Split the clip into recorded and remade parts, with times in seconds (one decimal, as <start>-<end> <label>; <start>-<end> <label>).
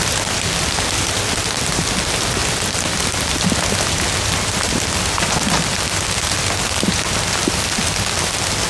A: 0.0-8.7 recorded